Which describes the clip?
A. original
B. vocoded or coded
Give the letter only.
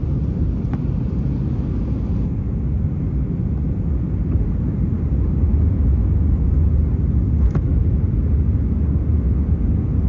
A